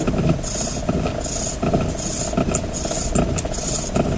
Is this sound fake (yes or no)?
no